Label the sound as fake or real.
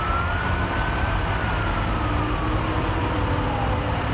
real